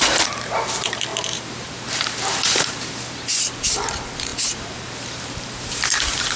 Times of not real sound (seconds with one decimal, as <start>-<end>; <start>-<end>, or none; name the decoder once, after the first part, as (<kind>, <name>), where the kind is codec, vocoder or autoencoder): 0.0-6.4 (vocoder, BigVGAN v2)